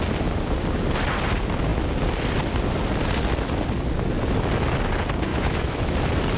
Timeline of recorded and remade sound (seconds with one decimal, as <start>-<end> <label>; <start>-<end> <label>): 0.0-5.3 recorded; 5.3-5.9 remade; 5.9-6.4 recorded